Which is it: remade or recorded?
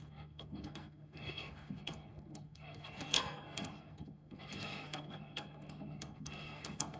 remade